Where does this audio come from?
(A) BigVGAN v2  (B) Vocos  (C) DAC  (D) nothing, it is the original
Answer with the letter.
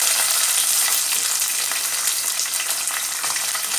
D